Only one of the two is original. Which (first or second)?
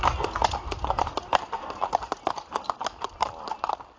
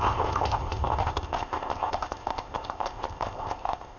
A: first